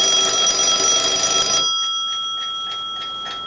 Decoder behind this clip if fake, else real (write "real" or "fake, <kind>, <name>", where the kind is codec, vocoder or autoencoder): real